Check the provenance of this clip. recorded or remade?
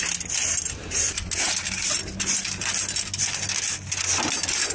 recorded